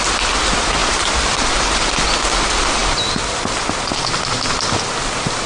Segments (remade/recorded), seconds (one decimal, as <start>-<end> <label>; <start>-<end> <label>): 0.0-5.5 recorded